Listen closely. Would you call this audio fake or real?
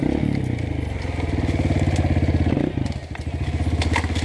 real